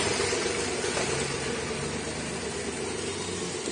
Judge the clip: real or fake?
real